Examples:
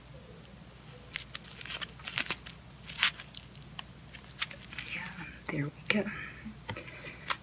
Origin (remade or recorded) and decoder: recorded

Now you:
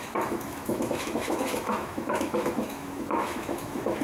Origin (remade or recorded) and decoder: remade, autoencoder, DAC-VAE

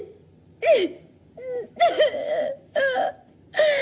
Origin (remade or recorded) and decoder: recorded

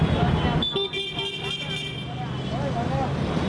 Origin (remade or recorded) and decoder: recorded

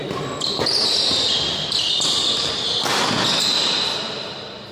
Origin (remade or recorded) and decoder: recorded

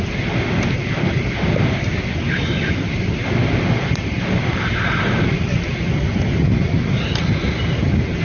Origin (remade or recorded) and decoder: recorded